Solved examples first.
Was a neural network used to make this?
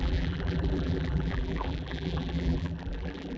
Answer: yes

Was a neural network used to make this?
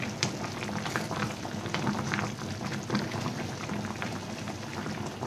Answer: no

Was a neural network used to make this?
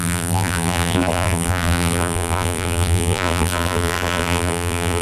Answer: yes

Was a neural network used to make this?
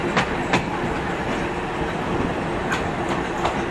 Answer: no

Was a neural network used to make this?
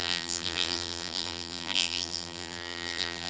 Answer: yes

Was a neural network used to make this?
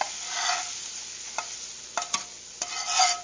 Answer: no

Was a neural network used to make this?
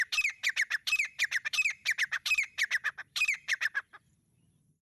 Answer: yes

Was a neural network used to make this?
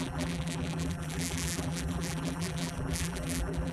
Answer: yes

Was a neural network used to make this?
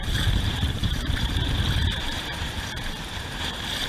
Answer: yes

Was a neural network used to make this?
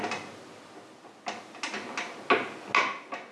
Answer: no